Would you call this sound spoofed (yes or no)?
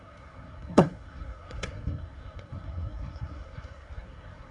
yes